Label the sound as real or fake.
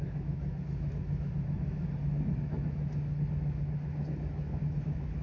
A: fake